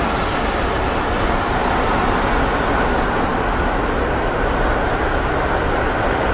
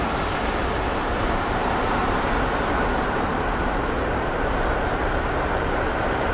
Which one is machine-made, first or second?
second